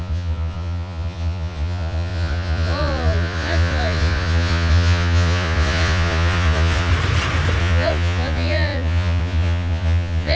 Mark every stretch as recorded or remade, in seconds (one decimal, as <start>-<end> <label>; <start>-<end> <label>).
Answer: 0.0-6.9 remade; 6.9-7.6 recorded; 7.6-10.3 remade